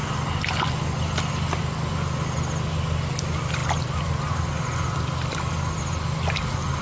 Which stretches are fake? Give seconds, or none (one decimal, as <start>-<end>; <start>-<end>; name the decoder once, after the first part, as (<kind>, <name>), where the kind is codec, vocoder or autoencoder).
none